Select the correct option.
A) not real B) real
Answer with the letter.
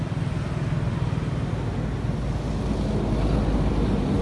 B